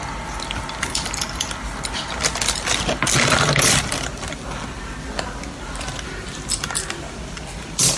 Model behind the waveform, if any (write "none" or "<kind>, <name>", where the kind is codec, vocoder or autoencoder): none